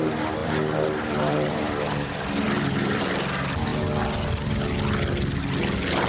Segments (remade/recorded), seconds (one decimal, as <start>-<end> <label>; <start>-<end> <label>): 0.0-0.4 recorded; 0.4-3.0 remade; 3.0-6.1 recorded